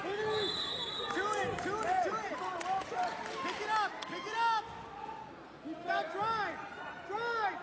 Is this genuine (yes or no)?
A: yes